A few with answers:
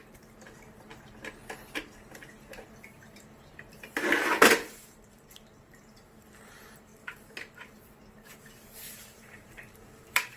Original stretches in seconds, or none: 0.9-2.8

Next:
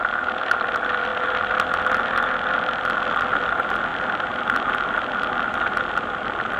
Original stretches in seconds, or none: 1.1-1.8; 3.9-5.5

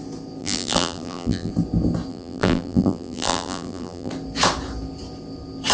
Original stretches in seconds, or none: 0.0-0.4; 1.5-2.1; 4.1-5.7

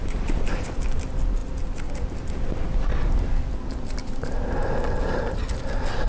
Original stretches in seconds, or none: 0.8-4.0; 4.5-6.1

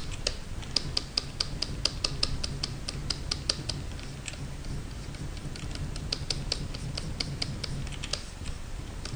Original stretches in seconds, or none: 0.7-3.0; 7.1-9.2

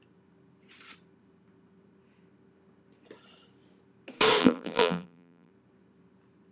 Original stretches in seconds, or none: 0.0-4.4; 5.5-6.5

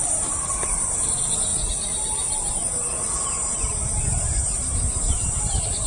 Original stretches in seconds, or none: none

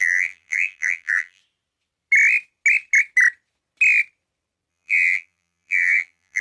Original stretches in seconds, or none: 1.4-4.7